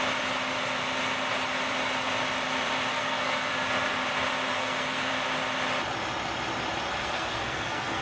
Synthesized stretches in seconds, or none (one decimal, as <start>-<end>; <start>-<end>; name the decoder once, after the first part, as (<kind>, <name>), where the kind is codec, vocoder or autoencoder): 2.9-3.5 (codec, SNAC); 4.5-5.1; 7.0-8.0